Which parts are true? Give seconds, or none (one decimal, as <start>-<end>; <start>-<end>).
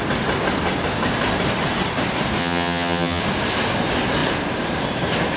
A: 0.0-2.4; 3.2-5.4